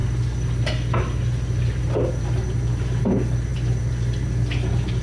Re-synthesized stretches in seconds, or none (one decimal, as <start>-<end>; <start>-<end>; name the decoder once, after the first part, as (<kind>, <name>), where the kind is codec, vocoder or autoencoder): none